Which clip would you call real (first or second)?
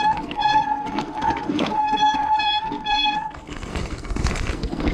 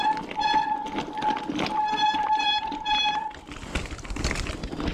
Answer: second